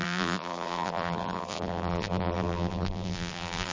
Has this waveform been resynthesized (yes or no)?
yes